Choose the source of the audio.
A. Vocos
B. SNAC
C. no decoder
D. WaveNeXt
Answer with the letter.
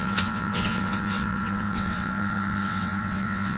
D